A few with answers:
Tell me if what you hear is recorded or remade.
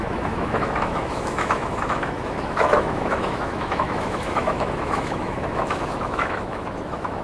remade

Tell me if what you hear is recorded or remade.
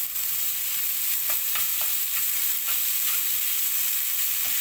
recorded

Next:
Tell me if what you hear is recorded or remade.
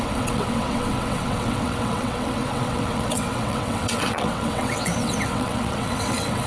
remade